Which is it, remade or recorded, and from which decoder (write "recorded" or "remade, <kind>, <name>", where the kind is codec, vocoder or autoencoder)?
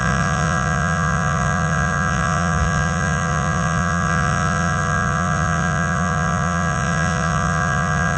remade, vocoder, Vocos